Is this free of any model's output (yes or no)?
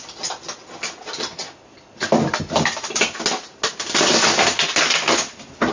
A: yes